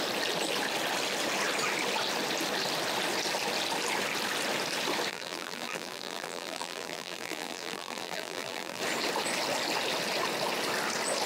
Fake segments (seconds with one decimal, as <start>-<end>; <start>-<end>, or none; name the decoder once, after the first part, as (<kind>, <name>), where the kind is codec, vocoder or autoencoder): 5.1-8.8 (vocoder, BigVGAN v2)